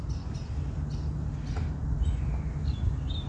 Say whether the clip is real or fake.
real